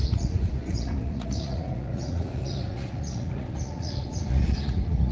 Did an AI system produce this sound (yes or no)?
yes